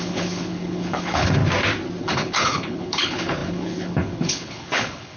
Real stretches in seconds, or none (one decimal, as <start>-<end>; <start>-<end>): 1.4-2.0